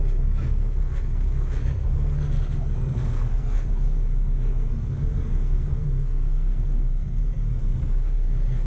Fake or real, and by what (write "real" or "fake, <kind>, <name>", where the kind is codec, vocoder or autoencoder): fake, codec, SNAC